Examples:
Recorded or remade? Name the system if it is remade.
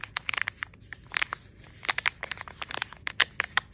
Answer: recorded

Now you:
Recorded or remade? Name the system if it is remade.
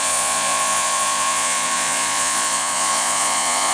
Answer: remade, vocoder, Vocos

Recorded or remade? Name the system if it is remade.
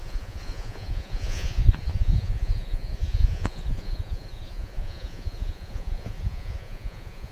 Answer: remade, vocoder, Vocos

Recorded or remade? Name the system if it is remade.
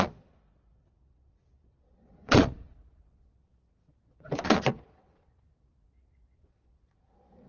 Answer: remade, vocoder, Vocos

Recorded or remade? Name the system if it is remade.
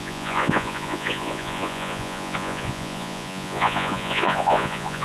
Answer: remade, vocoder, Vocos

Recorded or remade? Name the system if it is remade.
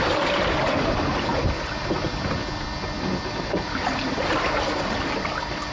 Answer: recorded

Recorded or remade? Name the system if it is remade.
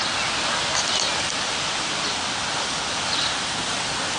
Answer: recorded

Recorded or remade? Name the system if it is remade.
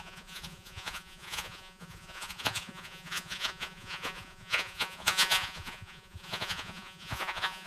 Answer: remade, vocoder, Vocos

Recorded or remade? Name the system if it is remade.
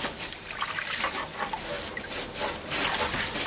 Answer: recorded